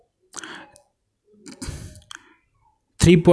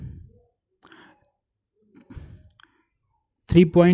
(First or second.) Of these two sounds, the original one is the first